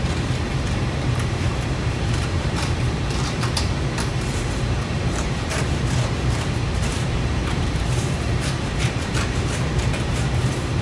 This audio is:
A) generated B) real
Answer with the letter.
A